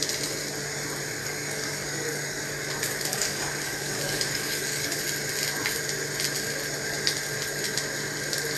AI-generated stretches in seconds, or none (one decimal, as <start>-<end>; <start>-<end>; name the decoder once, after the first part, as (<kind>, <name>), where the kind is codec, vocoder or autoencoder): 1.2-5.0 (codec, DAC)